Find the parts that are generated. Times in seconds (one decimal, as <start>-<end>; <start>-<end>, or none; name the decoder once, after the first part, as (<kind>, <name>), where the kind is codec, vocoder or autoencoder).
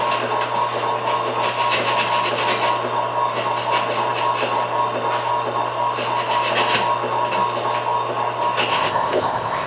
8.7-9.7 (codec, ZipCodec)